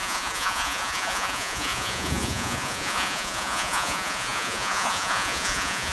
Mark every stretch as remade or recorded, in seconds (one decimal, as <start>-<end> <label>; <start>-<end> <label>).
0.0-5.9 remade